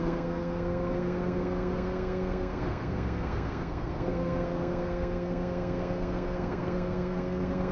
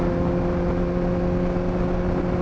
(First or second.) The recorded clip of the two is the second